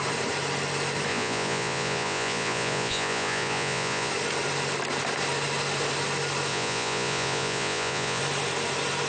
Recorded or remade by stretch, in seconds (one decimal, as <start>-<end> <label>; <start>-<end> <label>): 0.0-1.1 recorded; 1.1-4.1 remade; 4.1-6.5 recorded; 6.5-8.2 remade; 8.2-9.1 recorded